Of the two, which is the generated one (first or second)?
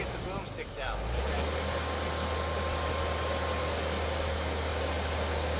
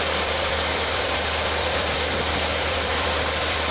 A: second